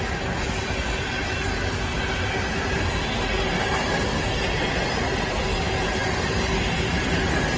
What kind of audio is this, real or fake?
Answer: real